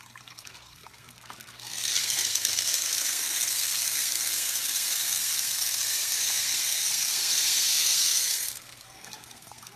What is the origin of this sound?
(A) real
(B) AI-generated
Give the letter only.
B